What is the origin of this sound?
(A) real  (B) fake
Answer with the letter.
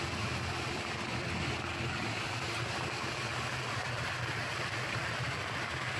A